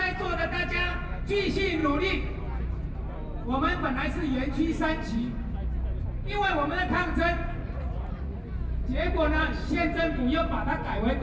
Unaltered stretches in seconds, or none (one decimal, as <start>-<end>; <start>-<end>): 0.0-7.6; 8.4-11.2

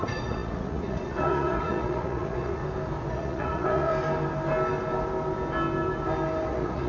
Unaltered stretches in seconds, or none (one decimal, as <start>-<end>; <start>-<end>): 2.6-3.1; 3.9-6.5